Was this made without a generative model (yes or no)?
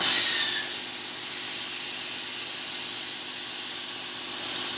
yes